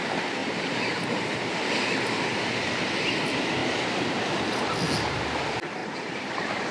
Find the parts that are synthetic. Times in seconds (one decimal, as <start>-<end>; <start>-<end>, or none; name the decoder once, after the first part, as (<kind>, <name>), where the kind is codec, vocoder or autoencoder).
0.4-1.7 (vocoder, BigVGAN v2); 3.6-4.2; 5.8-6.7